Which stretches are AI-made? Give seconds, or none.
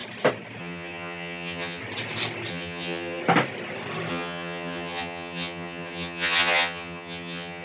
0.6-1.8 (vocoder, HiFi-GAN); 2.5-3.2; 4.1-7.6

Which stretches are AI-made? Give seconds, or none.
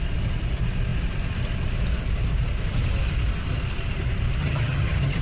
4.4-5.2 (vocoder, HiFi-GAN)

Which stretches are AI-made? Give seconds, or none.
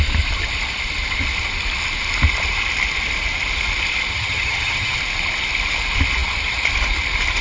4.1-5.0 (vocoder, HiFi-GAN)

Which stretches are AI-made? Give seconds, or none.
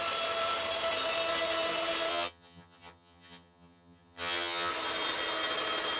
2.1-4.7 (vocoder, HiFi-GAN)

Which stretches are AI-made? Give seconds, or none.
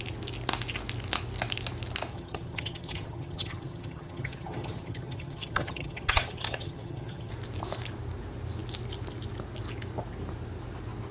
2.1-7.3 (vocoder, HiFi-GAN)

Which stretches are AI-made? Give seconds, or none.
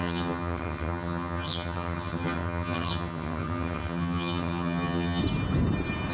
0.0-5.2 (vocoder, HiFi-GAN)